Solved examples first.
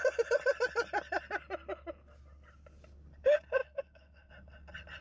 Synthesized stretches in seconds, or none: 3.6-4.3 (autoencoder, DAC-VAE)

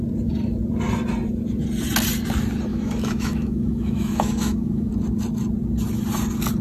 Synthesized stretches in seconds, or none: 2.7-4.9 (autoencoder, DAC-VAE)

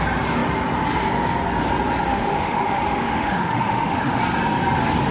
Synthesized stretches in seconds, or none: 2.1-4.2 (autoencoder, DAC-VAE)

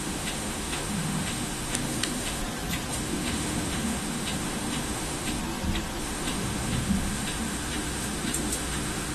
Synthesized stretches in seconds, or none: 0.0-2.4 (autoencoder, DAC-VAE); 2.9-5.4; 6.0-9.1

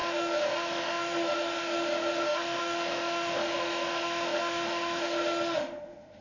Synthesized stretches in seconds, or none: 0.0-6.2 (autoencoder, DAC-VAE)

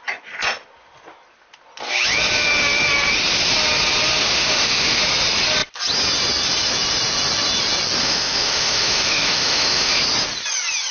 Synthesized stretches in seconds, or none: 4.2-5.0 (autoencoder, DAC-VAE); 8.0-10.0